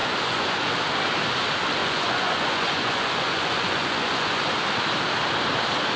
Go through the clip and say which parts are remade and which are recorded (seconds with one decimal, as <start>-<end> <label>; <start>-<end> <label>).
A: 0.0-0.7 remade; 0.7-1.8 recorded; 1.8-4.4 remade; 4.4-6.0 recorded